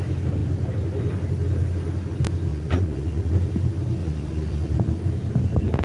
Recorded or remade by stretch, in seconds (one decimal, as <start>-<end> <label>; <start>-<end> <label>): 0.0-2.5 recorded; 2.5-3.3 remade; 3.3-4.0 recorded; 4.0-4.9 remade; 4.9-5.8 recorded